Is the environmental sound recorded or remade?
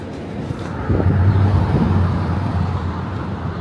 remade